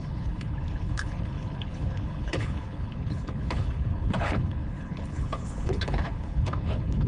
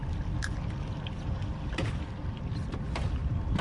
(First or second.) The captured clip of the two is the second